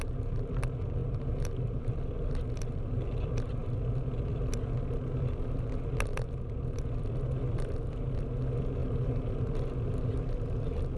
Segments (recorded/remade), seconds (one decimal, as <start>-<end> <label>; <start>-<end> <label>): 0.0-1.0 recorded; 1.0-1.8 remade; 1.8-8.8 recorded; 8.8-9.4 remade; 9.4-11.0 recorded